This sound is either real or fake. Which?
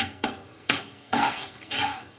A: fake